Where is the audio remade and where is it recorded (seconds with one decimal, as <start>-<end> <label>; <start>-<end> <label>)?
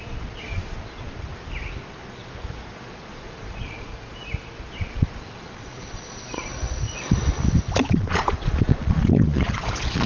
0.0-1.3 remade; 1.3-1.8 recorded; 1.8-2.2 remade; 2.2-2.7 recorded; 2.7-3.9 remade; 3.9-4.7 recorded; 4.7-6.5 remade; 6.5-7.8 recorded; 7.8-10.1 remade